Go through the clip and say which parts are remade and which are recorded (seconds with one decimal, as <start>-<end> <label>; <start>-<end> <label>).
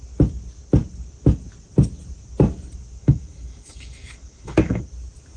0.0-3.0 recorded; 3.0-4.8 remade; 4.8-5.4 recorded